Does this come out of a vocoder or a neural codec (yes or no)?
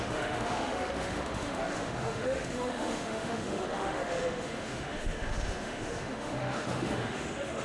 yes